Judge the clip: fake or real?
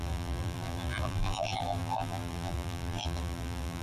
fake